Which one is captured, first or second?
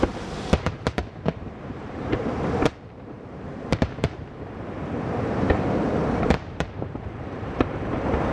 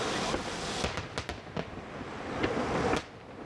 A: second